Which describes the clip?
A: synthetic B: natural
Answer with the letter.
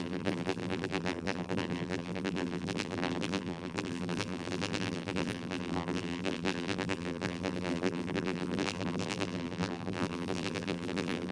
A